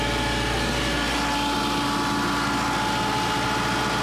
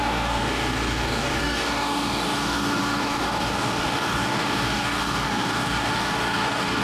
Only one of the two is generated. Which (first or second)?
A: second